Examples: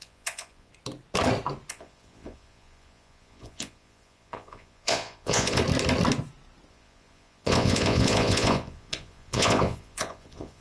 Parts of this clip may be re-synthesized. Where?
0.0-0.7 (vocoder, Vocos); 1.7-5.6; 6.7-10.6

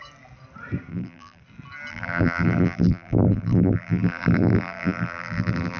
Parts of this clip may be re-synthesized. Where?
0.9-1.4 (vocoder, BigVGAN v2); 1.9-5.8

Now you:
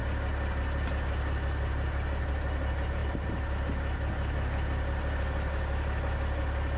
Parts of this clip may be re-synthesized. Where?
none

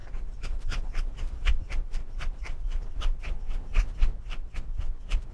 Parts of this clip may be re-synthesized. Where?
0.0-3.2 (vocoder, BigVGAN v2); 4.1-5.3

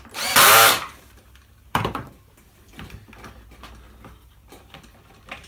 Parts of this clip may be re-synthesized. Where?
0.9-2.1 (vocoder, BigVGAN v2)

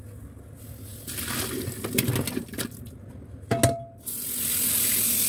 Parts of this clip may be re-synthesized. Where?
none

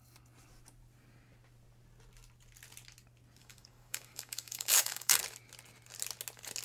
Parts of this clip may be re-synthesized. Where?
3.4-5.2 (codec, DAC)